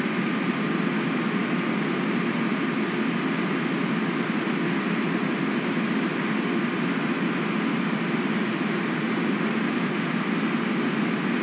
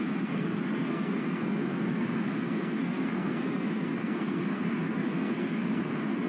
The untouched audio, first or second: first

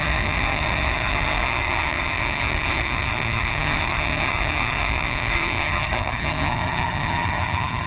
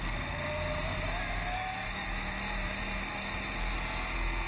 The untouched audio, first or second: second